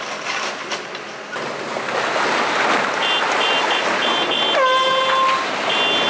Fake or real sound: real